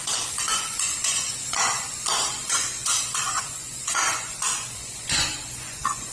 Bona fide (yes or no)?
no